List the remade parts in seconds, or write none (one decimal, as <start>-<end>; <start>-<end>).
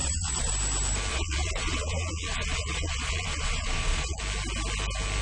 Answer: 0.0-0.5; 1.1-4.2